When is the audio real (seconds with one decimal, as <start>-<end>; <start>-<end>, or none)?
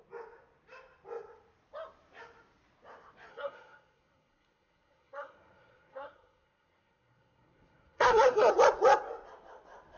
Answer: 0.0-3.3; 8.5-10.0